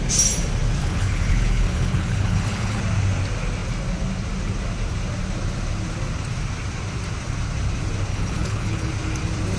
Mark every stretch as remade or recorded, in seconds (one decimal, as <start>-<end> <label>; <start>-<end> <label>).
0.0-0.8 recorded; 0.8-2.8 remade; 2.8-8.1 recorded; 8.1-8.9 remade; 8.9-9.6 recorded